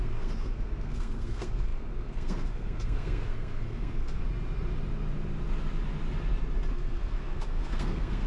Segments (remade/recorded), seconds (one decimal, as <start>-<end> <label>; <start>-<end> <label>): 0.0-4.2 remade; 4.2-6.7 recorded; 6.7-8.3 remade